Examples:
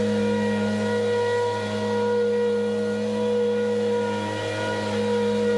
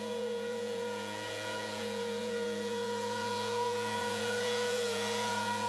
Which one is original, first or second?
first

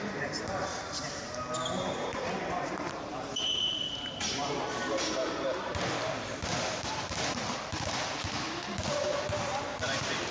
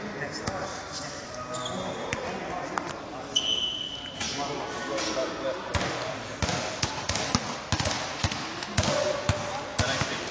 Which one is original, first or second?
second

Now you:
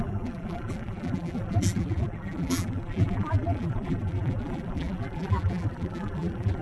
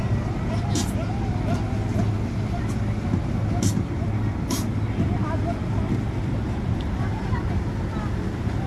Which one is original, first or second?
second